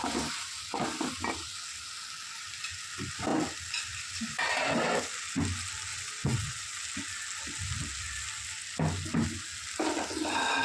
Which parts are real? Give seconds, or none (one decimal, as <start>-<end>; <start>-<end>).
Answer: 0.0-5.9; 6.6-10.6